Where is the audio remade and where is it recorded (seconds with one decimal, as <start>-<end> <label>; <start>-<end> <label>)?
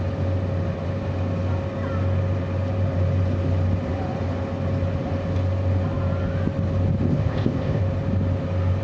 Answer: 0.0-7.1 recorded; 7.1-7.8 remade; 7.8-8.8 recorded